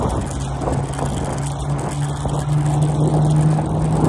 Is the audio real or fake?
real